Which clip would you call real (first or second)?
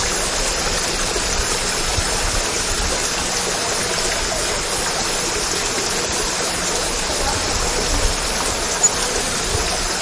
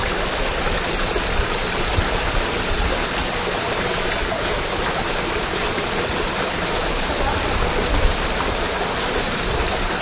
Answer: first